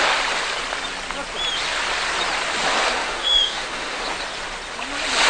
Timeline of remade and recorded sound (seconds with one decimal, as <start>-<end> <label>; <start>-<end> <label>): 0.0-3.0 recorded; 3.0-4.0 remade; 4.0-5.3 recorded